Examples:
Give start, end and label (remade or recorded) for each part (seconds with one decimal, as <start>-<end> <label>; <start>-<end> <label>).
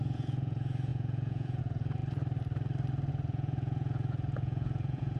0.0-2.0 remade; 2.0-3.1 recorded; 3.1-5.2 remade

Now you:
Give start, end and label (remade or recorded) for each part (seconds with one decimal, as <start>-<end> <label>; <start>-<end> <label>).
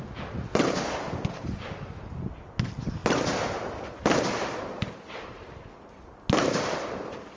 0.0-7.4 recorded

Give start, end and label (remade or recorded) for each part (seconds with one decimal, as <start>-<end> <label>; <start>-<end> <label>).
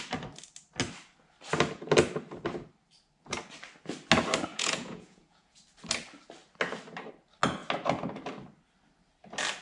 0.0-4.5 recorded; 4.5-5.6 remade; 5.6-9.6 recorded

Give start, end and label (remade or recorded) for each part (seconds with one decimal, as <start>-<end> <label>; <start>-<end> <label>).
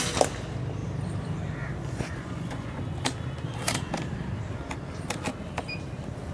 0.0-1.8 recorded; 1.8-2.8 remade; 2.8-6.3 recorded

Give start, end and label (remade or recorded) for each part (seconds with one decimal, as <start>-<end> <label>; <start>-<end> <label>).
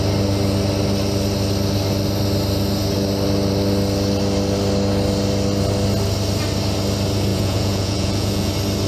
0.0-7.3 recorded; 7.3-8.5 remade; 8.5-8.9 recorded